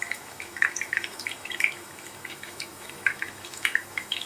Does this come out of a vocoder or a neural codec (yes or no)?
yes